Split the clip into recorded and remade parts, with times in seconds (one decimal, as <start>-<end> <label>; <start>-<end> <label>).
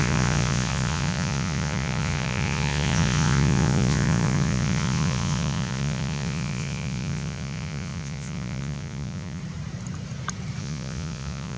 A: 0.0-9.4 remade; 9.4-10.6 recorded; 10.6-11.6 remade